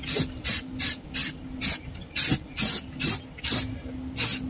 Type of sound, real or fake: real